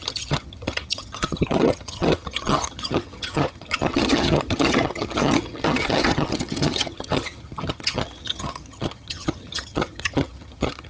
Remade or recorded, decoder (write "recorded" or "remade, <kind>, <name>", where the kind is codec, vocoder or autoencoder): remade, vocoder, HiFi-GAN